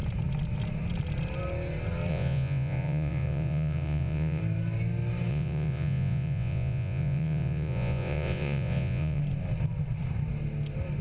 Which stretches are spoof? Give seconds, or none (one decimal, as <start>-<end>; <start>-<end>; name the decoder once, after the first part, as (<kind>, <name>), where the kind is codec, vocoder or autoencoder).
2.1-4.4 (vocoder, Vocos); 5.3-9.2